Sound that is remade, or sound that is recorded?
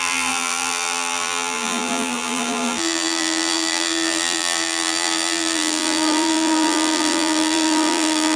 remade